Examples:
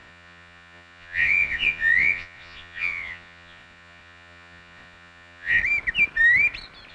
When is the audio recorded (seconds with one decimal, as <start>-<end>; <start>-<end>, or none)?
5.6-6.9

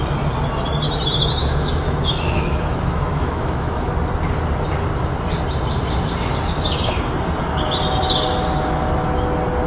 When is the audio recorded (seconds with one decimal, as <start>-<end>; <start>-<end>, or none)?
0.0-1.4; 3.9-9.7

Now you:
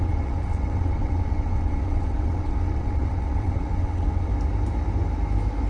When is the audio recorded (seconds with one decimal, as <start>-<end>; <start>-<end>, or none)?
4.3-5.7

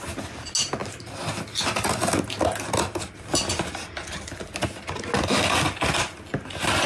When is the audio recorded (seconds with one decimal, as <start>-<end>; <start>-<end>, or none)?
0.0-6.9

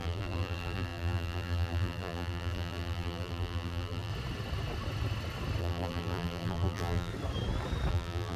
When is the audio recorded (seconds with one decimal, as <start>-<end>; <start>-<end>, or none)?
4.1-5.6; 7.1-7.9

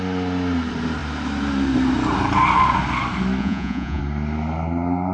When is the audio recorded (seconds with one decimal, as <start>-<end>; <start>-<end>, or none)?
0.0-3.4; 4.0-5.1

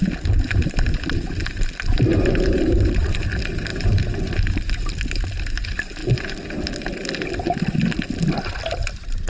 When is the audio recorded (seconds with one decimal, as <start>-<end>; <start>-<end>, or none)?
0.0-1.4; 3.2-3.7; 5.2-9.3